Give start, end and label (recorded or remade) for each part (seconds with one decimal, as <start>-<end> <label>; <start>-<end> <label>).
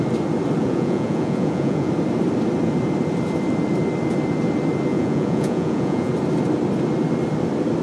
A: 0.0-0.6 recorded; 0.6-1.9 remade; 1.9-4.9 recorded; 4.9-6.1 remade; 6.1-7.8 recorded